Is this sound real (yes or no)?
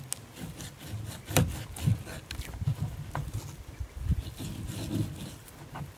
yes